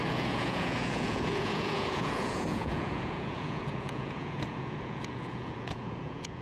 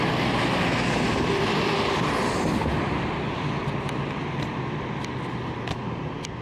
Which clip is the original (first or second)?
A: second